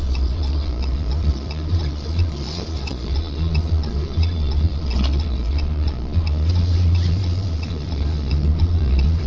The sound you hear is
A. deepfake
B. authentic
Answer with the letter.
A